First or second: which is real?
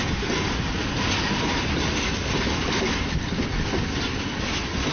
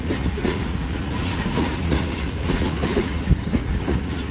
first